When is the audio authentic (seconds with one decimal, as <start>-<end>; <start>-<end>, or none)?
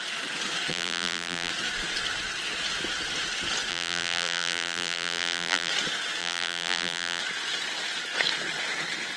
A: 0.0-0.7; 1.5-3.7; 5.7-6.2; 7.2-9.2